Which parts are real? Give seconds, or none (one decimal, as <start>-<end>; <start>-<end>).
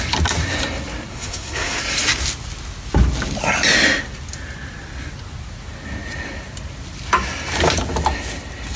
0.0-1.1; 1.8-8.8